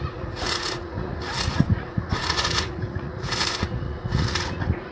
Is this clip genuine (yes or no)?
no